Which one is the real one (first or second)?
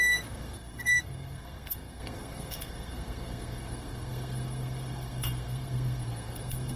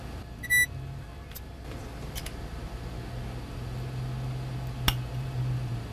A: second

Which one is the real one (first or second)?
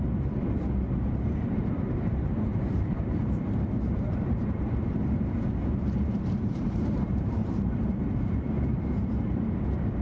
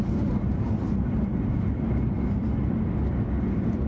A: second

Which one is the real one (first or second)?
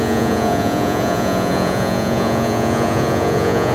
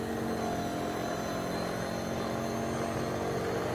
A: second